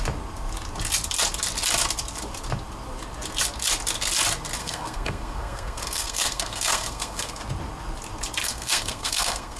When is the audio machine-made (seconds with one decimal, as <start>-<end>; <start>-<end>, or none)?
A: 4.6-7.4; 8.4-9.6